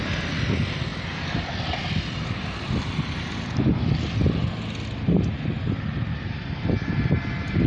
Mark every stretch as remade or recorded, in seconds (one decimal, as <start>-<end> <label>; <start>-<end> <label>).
0.0-7.7 recorded